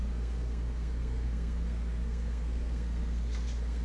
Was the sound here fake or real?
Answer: fake